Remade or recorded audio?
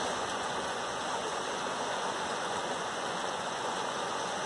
remade